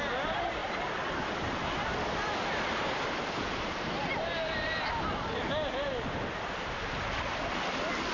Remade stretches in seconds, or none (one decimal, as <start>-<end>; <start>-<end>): 0.6-3.8